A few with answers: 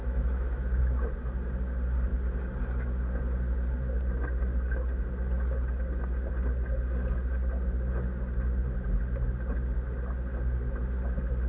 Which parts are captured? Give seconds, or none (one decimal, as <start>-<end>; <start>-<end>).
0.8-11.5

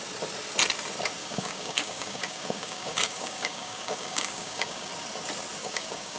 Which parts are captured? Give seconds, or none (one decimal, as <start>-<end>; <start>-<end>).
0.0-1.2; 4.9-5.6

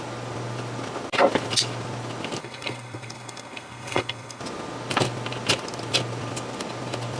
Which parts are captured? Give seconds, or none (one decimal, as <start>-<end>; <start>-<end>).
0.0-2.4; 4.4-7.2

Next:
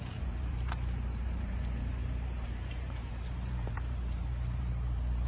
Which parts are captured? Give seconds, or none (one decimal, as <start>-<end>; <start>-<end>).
none

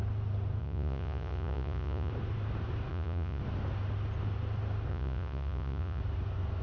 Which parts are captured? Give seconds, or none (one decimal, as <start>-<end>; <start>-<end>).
0.0-0.6; 2.1-2.9; 3.4-4.9; 6.0-6.6

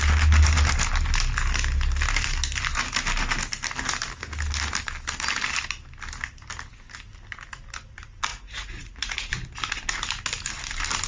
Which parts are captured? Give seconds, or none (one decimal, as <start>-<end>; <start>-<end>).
0.0-8.3; 9.3-11.1